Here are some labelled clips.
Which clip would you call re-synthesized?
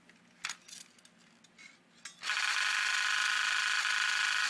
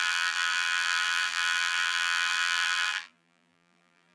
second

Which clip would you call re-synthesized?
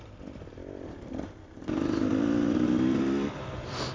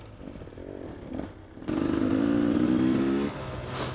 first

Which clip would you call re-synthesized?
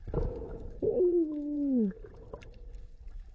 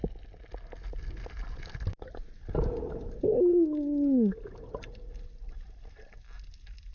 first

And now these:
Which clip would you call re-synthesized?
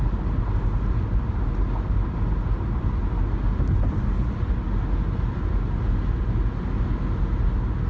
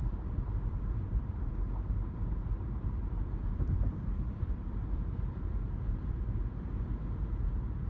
second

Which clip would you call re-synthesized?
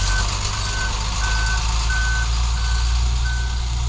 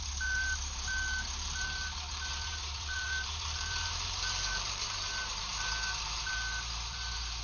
second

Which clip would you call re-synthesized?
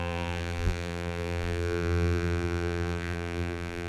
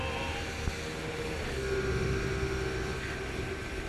first